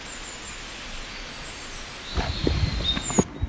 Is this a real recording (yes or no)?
yes